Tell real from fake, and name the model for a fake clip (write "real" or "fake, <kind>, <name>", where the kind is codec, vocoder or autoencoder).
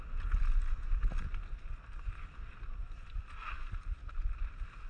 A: real